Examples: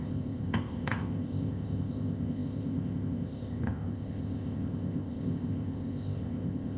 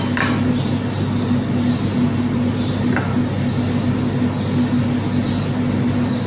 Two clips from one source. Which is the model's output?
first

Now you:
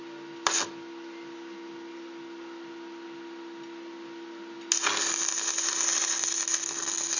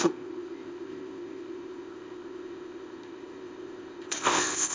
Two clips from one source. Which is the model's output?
second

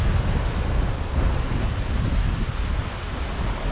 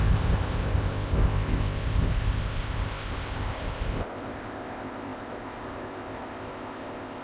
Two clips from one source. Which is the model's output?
second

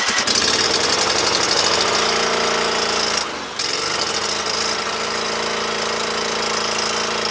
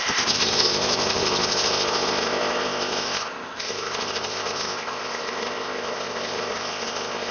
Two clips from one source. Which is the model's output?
second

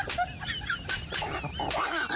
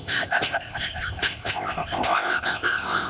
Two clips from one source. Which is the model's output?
second